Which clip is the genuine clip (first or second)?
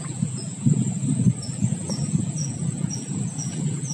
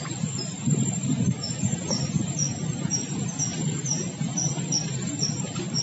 second